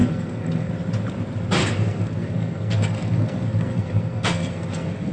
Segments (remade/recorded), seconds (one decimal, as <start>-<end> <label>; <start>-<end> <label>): 0.0-0.7 remade; 0.7-1.6 recorded; 1.6-5.1 remade